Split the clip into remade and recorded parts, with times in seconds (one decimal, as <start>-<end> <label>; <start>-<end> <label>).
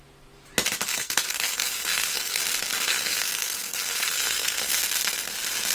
0.0-0.9 recorded; 0.9-2.4 remade; 2.4-2.9 recorded; 2.9-4.8 remade; 4.8-5.7 recorded